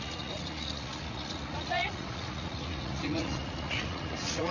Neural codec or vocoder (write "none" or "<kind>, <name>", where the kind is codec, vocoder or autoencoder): vocoder, Vocos